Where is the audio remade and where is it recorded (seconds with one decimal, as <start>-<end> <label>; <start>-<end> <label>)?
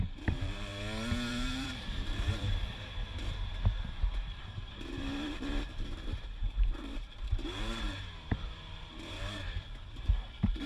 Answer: 0.0-0.7 remade; 0.7-1.3 recorded; 1.3-10.7 remade